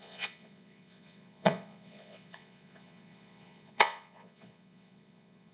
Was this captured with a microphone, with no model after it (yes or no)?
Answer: no